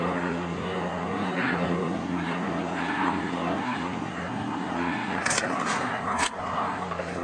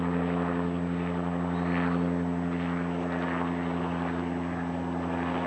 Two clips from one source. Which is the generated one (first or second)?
first